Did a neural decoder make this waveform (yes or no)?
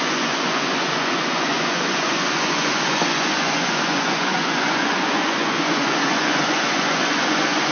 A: yes